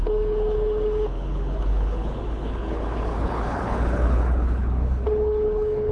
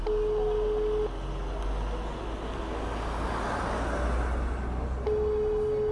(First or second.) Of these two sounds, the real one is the second